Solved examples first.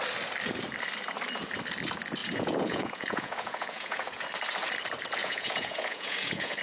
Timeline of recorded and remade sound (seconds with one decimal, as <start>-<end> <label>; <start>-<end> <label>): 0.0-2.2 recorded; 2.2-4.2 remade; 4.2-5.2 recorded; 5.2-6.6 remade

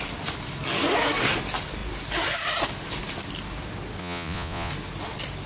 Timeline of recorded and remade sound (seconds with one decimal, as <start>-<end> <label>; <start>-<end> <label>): 0.0-4.0 recorded; 4.0-4.7 remade; 4.7-5.5 recorded

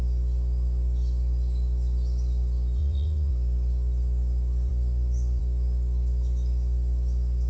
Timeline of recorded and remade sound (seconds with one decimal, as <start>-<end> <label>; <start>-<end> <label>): 0.0-2.8 recorded; 2.8-3.3 remade; 3.3-7.5 recorded